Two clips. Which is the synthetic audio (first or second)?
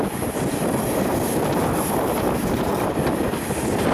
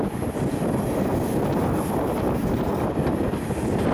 first